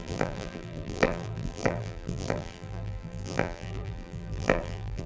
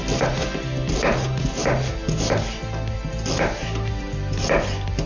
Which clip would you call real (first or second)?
second